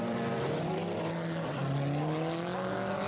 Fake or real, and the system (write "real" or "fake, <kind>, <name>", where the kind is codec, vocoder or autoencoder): real